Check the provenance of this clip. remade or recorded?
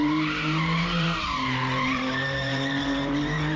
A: remade